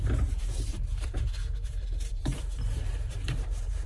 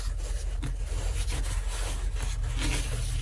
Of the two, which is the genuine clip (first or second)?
second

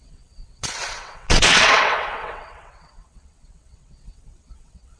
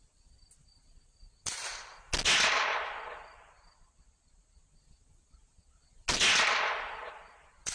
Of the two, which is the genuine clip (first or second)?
second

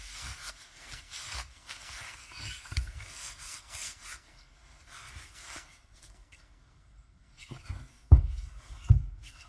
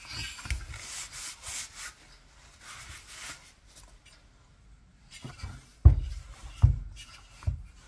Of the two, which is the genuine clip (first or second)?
second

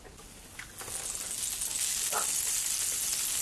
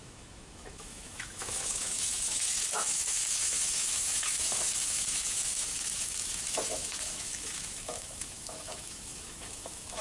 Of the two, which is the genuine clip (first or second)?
first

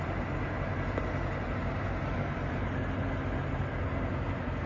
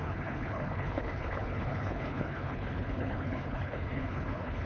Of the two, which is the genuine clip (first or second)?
first